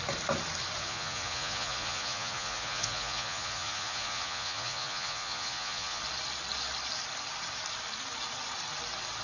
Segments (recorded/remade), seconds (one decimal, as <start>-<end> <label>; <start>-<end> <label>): 0.0-0.8 recorded; 0.8-6.0 remade; 6.0-9.2 recorded